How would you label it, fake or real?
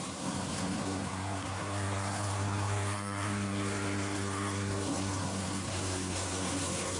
fake